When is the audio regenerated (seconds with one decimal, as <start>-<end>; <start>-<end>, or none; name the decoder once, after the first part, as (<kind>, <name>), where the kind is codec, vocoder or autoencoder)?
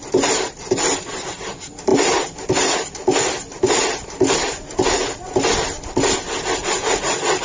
none